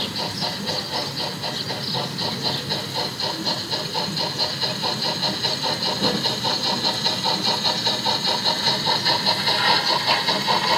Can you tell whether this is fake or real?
real